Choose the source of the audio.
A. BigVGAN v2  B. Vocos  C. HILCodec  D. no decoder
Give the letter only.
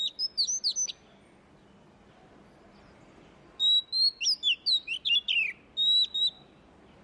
D